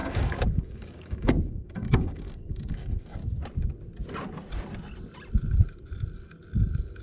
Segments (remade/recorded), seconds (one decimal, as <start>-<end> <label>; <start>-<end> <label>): 0.0-3.2 remade; 3.2-7.0 recorded